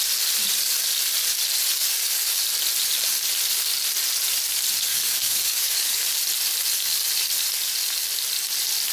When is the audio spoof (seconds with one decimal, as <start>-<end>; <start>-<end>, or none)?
1.7-2.4; 4.9-6.1